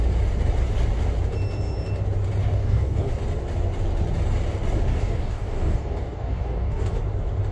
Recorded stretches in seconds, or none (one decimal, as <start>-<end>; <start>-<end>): 0.0-2.4; 3.1-4.9; 7.0-7.5